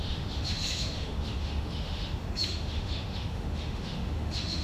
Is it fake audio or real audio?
fake